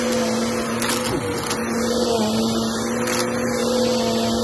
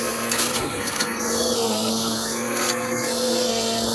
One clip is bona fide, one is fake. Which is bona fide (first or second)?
first